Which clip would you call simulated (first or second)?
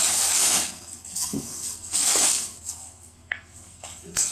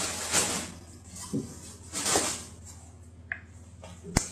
first